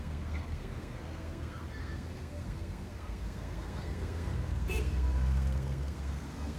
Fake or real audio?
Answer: fake